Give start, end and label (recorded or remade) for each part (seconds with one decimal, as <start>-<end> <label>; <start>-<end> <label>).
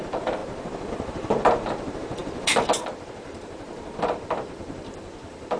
0.0-5.6 remade